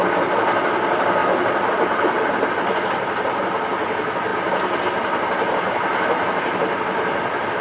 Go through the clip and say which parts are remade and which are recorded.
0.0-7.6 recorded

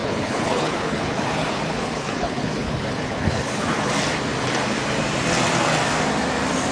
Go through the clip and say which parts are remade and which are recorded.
0.0-3.9 remade; 3.9-6.7 recorded